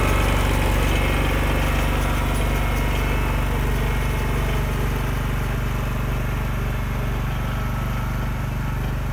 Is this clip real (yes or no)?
yes